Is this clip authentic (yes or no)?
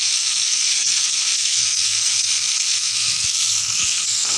no